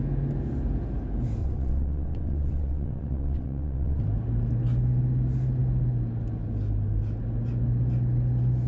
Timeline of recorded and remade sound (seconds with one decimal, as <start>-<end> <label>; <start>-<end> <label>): 0.0-1.4 recorded; 1.4-4.0 remade; 4.0-8.7 recorded